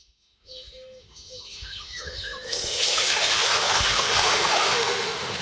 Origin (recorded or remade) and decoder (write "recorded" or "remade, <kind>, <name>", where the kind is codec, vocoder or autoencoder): remade, autoencoder, DAC-VAE